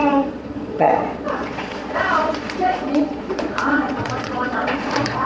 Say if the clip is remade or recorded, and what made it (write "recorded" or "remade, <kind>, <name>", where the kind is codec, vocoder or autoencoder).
remade, vocoder, Vocos